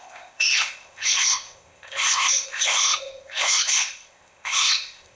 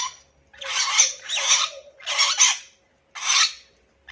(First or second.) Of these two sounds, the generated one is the first